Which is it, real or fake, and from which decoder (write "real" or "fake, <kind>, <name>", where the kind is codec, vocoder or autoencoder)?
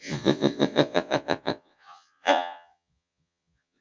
fake, vocoder, Vocos